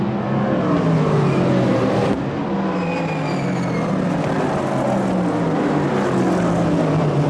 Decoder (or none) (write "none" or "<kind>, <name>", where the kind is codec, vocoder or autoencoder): none